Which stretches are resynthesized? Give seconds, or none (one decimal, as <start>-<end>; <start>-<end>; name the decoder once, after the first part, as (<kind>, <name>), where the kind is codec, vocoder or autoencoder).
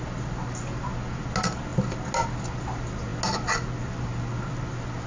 none